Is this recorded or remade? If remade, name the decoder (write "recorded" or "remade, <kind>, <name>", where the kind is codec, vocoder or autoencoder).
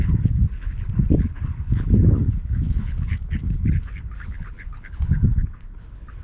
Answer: remade, codec, HILCodec